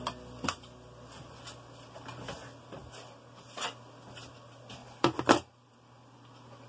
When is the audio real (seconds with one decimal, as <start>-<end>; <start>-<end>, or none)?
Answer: 0.0-6.7